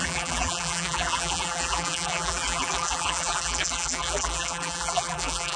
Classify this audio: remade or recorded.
remade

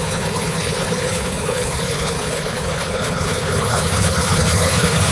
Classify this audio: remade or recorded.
remade